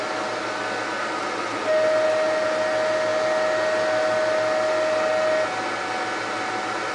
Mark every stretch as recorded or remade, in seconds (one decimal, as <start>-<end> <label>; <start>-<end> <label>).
0.0-6.9 recorded